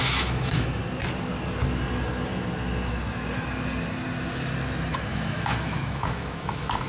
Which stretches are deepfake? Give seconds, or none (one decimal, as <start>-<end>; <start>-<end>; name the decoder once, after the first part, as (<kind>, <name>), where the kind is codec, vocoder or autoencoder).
0.0-0.8 (autoencoder, DAC-VAE); 4.9-6.9